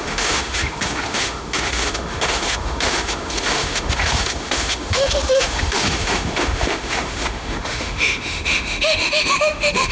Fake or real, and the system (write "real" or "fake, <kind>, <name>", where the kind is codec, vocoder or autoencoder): fake, autoencoder, DAC-VAE